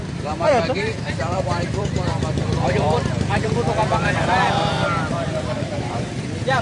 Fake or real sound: fake